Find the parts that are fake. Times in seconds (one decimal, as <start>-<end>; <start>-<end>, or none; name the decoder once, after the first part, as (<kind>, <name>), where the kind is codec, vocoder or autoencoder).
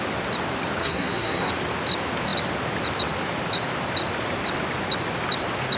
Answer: 0.8-1.5 (codec, SNAC)